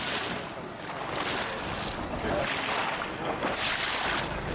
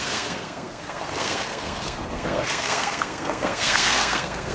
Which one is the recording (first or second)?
first